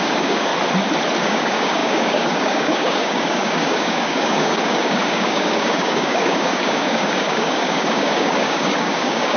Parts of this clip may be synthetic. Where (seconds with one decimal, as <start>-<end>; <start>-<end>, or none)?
0.0-0.5; 1.2-9.4